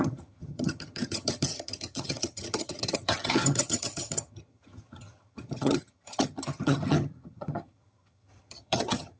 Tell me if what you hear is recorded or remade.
remade